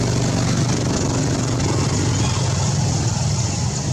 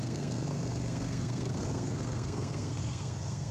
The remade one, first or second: second